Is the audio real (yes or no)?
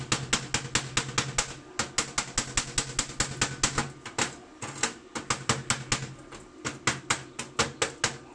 yes